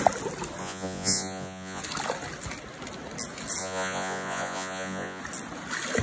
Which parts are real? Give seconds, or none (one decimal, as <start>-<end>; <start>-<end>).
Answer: 0.0-0.6; 1.8-3.6; 5.2-6.0